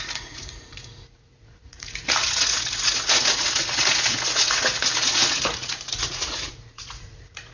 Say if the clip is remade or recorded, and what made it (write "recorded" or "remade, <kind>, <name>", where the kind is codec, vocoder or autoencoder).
remade, vocoder, Vocos